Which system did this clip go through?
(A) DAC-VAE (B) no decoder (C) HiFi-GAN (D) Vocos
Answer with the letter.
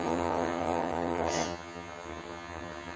C